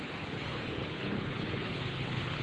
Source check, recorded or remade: remade